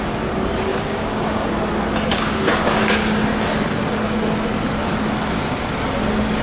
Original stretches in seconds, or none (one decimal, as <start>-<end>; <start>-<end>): 0.0-0.7; 1.5-2.1; 3.5-6.4